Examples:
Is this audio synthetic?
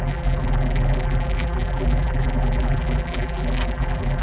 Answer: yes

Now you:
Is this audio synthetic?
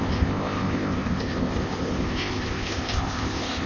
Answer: yes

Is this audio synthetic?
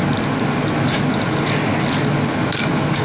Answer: no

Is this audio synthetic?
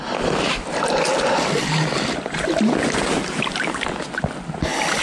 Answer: no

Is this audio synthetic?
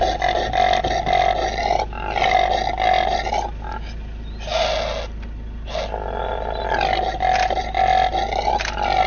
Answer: no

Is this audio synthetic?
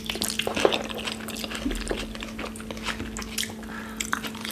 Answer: no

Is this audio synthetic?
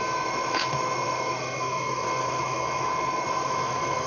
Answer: yes